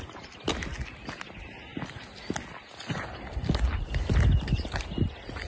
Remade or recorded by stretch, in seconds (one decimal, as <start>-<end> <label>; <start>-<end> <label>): 0.0-5.5 recorded